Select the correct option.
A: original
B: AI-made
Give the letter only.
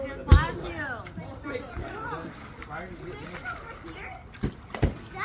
A